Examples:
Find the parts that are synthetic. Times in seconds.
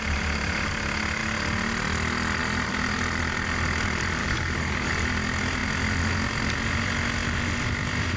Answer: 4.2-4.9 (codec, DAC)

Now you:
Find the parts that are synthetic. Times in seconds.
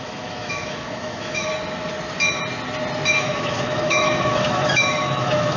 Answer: 0.0-1.5 (autoencoder, DAC-VAE); 3.2-5.6